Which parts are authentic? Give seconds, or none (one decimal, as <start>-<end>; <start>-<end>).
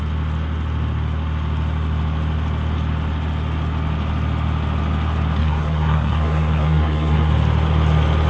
0.0-5.4; 7.3-8.3